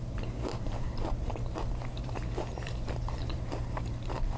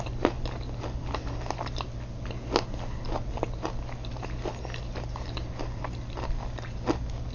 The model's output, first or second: first